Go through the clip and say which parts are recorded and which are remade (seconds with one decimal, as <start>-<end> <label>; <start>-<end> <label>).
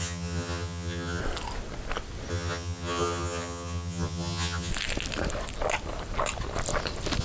0.0-1.2 remade; 1.2-2.3 recorded; 2.3-4.7 remade; 4.7-7.2 recorded